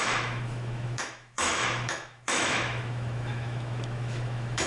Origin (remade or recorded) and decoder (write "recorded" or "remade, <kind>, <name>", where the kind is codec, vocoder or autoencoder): remade, autoencoder, DAC-VAE